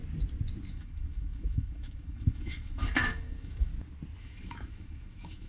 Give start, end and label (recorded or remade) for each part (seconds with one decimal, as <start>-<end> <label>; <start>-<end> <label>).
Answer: 0.0-0.7 recorded; 0.7-3.7 remade; 3.7-4.2 recorded; 4.2-5.5 remade